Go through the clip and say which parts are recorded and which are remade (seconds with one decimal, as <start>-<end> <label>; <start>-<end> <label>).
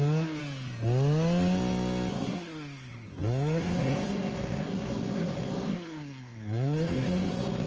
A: 0.0-0.4 remade; 0.4-2.1 recorded; 2.1-7.7 remade